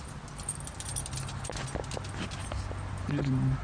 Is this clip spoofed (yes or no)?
no